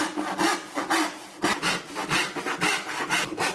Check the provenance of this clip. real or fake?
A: real